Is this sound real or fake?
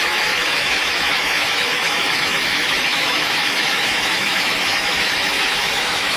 fake